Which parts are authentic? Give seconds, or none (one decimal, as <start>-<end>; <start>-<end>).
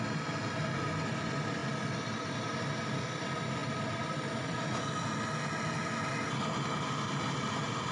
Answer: 0.0-3.6; 4.8-7.9